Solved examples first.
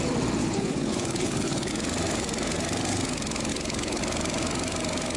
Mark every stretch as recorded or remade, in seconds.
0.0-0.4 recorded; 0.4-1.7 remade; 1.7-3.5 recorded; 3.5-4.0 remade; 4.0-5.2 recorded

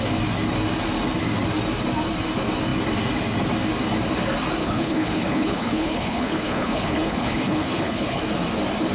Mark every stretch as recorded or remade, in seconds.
0.0-4.6 recorded; 4.6-8.2 remade; 8.2-8.9 recorded

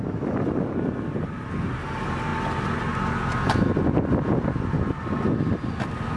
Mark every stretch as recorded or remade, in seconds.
0.0-6.2 recorded

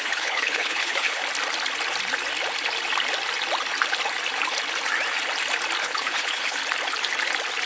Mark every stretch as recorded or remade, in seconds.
0.0-1.2 remade; 1.2-5.8 recorded; 5.8-6.6 remade; 6.6-7.7 recorded